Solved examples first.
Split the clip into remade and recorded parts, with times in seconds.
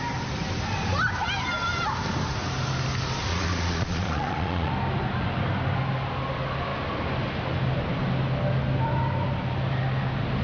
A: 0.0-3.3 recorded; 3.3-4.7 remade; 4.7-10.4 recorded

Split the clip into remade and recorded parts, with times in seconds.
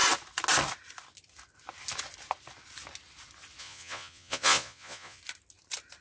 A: 0.0-3.6 recorded; 3.6-5.2 remade; 5.2-6.0 recorded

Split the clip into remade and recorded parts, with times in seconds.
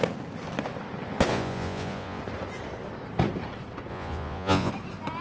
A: 0.0-1.3 recorded; 1.3-2.2 remade; 2.2-3.9 recorded; 3.9-4.7 remade; 4.7-5.2 recorded